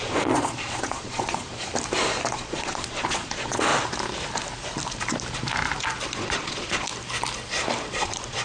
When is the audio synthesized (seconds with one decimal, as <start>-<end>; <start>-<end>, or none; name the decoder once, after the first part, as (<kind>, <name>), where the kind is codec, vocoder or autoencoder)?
0.0-1.7 (vocoder, Vocos); 2.3-3.7; 6.1-6.9; 7.9-8.4